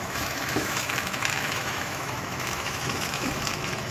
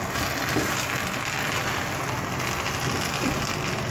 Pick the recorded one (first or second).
second